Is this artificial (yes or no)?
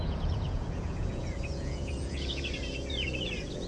yes